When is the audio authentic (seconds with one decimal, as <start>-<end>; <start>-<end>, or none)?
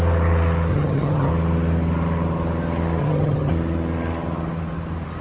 0.0-0.7; 1.3-3.0; 3.5-5.2